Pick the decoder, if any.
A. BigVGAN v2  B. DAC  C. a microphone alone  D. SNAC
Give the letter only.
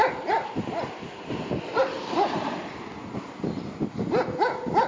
C